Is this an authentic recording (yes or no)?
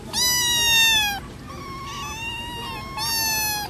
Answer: yes